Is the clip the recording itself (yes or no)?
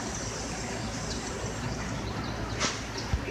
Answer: yes